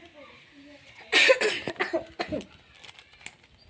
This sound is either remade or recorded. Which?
recorded